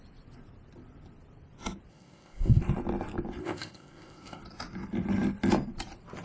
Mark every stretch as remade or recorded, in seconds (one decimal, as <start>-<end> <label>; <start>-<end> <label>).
0.0-1.9 recorded; 1.9-2.6 remade; 2.6-3.4 recorded; 3.4-4.4 remade; 4.4-6.2 recorded